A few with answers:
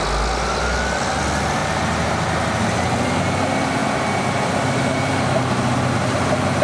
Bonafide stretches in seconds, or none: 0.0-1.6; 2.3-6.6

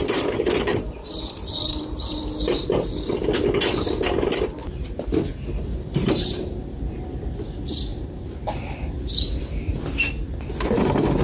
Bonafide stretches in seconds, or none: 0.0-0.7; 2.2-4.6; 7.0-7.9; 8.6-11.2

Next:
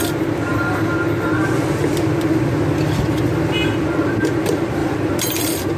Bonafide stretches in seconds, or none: 0.0-4.8